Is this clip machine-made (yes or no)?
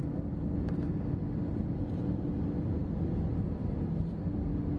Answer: no